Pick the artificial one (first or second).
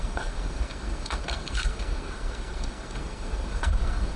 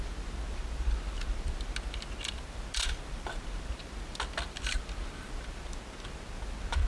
first